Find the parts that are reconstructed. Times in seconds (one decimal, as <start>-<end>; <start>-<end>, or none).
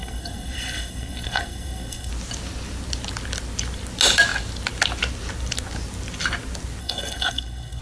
0.0-2.1; 6.8-7.8